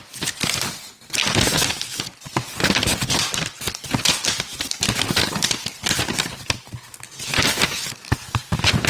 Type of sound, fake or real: real